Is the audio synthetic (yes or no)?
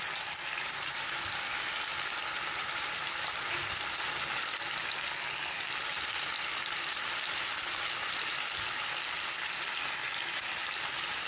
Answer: no